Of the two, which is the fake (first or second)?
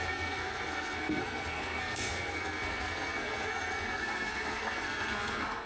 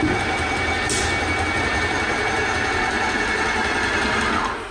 first